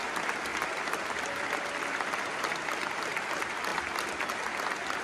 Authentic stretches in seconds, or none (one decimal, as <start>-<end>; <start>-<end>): 0.0-5.0